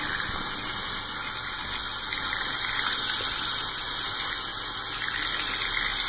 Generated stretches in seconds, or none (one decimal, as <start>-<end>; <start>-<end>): none

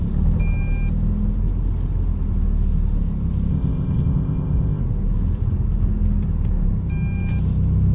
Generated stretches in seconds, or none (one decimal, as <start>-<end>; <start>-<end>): 3.5-4.8

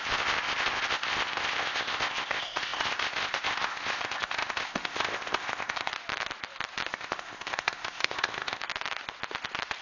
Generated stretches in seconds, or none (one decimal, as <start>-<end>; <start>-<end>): 0.0-5.9; 6.9-8.6

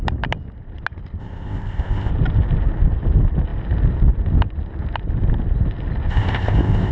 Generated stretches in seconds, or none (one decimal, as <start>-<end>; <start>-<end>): 1.2-2.1; 6.1-6.9

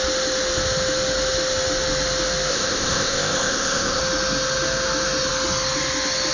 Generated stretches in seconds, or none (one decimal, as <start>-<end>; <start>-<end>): 2.5-4.0

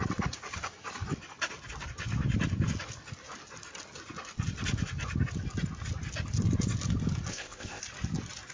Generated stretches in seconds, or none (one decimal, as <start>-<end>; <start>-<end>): 7.3-7.8